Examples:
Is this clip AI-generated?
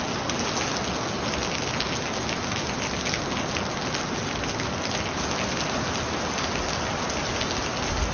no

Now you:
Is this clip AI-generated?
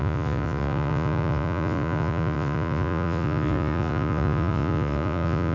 yes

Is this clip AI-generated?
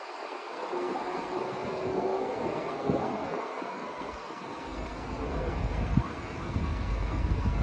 yes